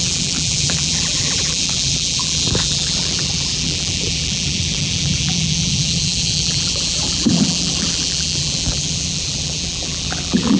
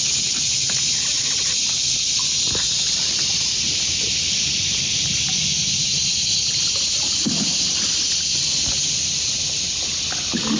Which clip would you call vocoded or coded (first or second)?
first